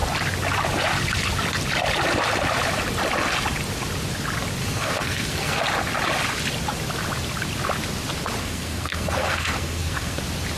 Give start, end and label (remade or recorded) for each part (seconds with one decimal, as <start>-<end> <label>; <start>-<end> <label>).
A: 0.0-4.6 recorded; 4.6-5.6 remade; 5.6-8.4 recorded; 8.4-10.2 remade; 10.2-10.6 recorded